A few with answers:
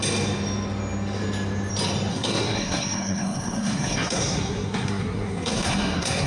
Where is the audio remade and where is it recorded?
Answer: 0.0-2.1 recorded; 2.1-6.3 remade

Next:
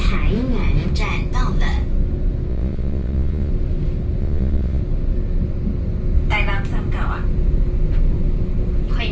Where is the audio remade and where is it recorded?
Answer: 0.0-2.5 recorded; 2.5-3.5 remade; 3.5-4.2 recorded; 4.2-4.8 remade; 4.8-9.1 recorded

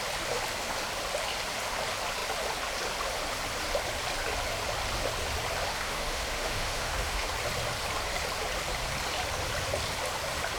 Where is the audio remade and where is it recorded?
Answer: 0.0-5.7 recorded; 5.7-7.3 remade; 7.3-10.6 recorded

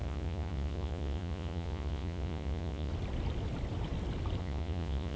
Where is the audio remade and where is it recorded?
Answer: 0.0-2.9 remade; 2.9-4.4 recorded; 4.4-5.2 remade

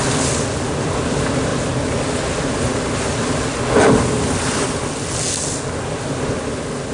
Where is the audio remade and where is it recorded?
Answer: 0.0-6.9 recorded

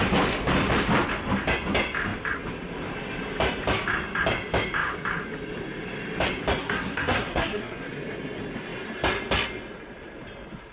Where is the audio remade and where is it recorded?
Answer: 0.0-6.6 recorded; 6.6-7.9 remade; 7.9-10.7 recorded

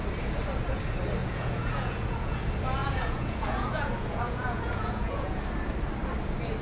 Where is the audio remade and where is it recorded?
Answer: 0.0-1.2 recorded; 1.2-2.4 remade; 2.4-2.8 recorded; 2.8-5.4 remade; 5.4-6.6 recorded